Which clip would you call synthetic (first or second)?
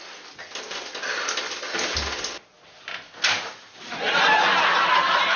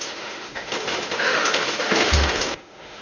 second